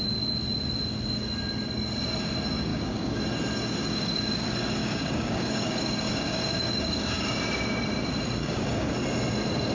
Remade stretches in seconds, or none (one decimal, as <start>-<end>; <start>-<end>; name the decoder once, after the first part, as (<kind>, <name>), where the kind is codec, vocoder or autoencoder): 2.7-3.2 (codec, DAC); 3.8-4.3; 4.8-7.4; 8.4-8.9